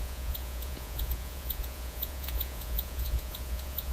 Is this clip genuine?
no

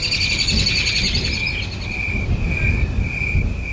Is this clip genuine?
yes